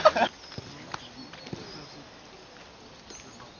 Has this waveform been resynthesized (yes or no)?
no